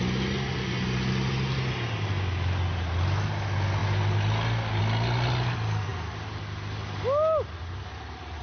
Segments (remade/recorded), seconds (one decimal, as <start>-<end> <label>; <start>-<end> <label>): 0.0-8.4 recorded